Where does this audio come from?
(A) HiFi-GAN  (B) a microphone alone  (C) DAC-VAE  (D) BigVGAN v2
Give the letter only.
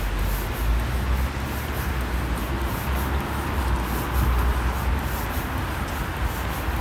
B